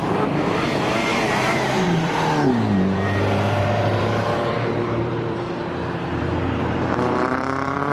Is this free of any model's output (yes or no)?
no